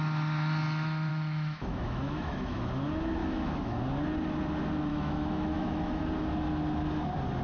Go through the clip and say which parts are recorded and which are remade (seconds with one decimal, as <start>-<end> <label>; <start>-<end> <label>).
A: 0.0-1.1 recorded; 1.1-2.6 remade; 2.6-3.2 recorded; 3.2-3.8 remade; 3.8-4.9 recorded; 4.9-6.0 remade; 6.0-7.4 recorded